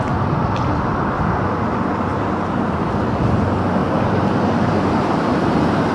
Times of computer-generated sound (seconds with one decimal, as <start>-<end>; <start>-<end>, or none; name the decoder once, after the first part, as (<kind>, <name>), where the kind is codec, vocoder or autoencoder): 2.1-2.8 (vocoder, BigVGAN v2); 3.8-5.9